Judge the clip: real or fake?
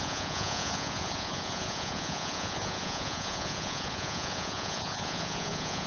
fake